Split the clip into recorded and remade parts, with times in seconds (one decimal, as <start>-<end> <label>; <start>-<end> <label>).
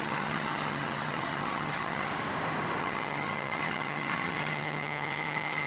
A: 0.0-2.1 remade; 2.1-2.8 recorded; 2.8-5.7 remade